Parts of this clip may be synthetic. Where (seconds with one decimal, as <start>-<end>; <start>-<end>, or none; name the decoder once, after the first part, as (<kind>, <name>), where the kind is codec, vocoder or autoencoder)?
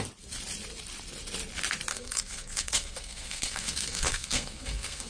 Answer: 1.9-5.1 (codec, SNAC)